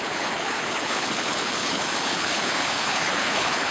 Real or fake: fake